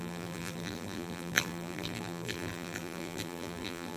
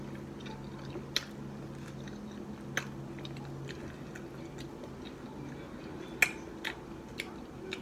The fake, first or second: first